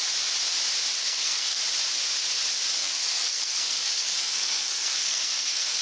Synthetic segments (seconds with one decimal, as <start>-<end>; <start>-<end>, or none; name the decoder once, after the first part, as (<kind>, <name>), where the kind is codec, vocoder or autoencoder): 1.0-1.6 (codec, SNAC); 2.8-5.8